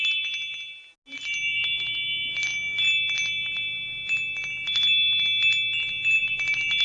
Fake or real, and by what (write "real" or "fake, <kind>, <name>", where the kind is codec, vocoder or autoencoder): real